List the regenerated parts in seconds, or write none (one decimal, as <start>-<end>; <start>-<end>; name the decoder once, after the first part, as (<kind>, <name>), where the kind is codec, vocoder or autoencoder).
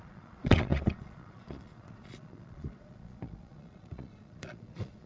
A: 0.0-5.1 (vocoder, Vocos)